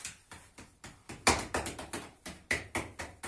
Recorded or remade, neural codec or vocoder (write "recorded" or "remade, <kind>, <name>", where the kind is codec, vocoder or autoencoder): recorded